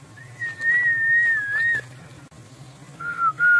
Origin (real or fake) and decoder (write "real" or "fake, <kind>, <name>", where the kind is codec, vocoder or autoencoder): real